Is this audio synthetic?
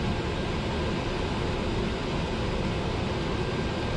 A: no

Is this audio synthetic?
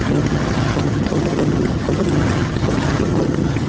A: yes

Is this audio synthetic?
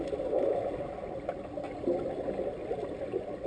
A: no